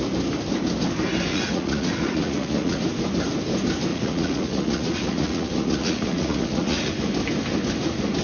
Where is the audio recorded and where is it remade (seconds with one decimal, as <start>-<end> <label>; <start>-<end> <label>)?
0.0-1.3 recorded; 1.3-2.8 remade; 2.8-3.9 recorded; 3.9-6.9 remade; 6.9-8.2 recorded

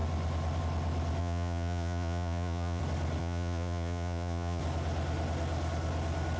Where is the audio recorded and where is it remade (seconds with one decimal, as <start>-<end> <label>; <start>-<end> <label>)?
0.0-1.2 recorded; 1.2-2.8 remade; 2.8-3.2 recorded; 3.2-4.6 remade; 4.6-6.4 recorded

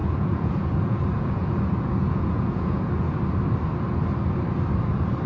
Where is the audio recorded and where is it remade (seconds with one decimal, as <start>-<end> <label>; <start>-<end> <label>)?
0.0-3.2 remade; 3.2-5.3 recorded

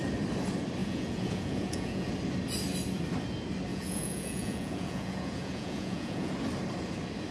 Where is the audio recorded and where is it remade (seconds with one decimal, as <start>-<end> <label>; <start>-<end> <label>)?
0.0-0.8 recorded; 0.8-2.1 remade; 2.1-3.7 recorded; 3.7-6.3 remade; 6.3-7.3 recorded

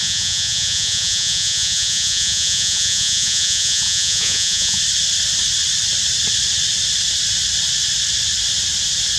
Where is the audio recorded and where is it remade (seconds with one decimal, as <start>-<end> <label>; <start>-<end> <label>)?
0.0-4.8 remade; 4.8-9.2 recorded

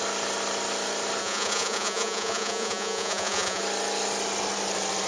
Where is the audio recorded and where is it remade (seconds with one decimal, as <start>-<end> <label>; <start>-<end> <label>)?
0.0-1.2 recorded; 1.2-3.6 remade; 3.6-5.1 recorded